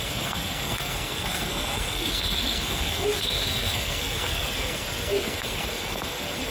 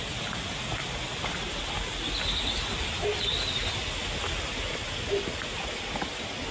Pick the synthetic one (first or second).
first